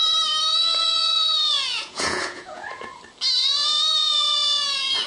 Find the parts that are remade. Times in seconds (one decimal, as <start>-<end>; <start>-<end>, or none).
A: 0.5-3.0; 3.4-5.1